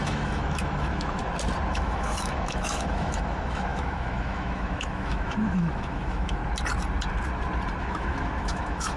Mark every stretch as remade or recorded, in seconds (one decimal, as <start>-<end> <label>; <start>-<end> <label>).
0.0-1.2 remade; 1.2-1.7 recorded; 1.7-6.4 remade; 6.4-7.8 recorded; 7.8-9.0 remade